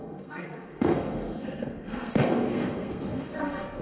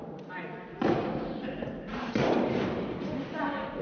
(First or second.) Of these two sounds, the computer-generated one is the first